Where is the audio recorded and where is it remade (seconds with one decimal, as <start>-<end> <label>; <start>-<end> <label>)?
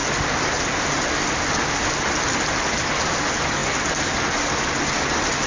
0.0-5.5 recorded